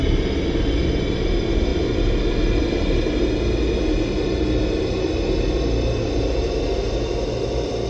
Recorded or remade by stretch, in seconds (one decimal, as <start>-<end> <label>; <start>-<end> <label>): 0.0-7.9 recorded